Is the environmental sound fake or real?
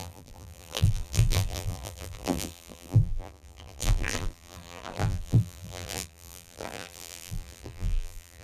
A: fake